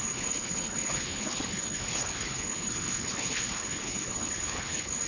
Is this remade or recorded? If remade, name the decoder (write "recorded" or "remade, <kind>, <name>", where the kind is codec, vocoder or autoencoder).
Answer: remade, codec, HILCodec